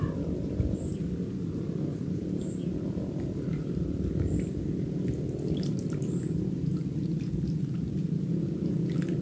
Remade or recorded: recorded